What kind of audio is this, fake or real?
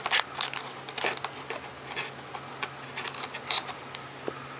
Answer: real